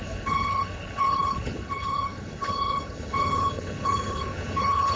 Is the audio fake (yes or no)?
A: yes